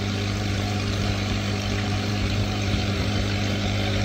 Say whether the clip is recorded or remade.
remade